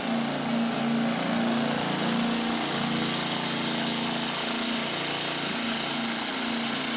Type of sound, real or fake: real